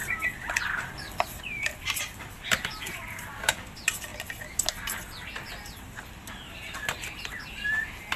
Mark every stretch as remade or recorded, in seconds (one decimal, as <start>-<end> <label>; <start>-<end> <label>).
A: 0.0-0.6 recorded; 0.6-4.1 remade; 4.1-8.2 recorded